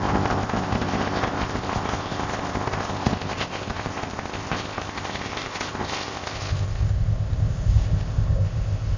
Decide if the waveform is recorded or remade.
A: remade